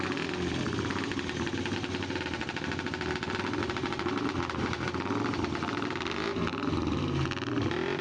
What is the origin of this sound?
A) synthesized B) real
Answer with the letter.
B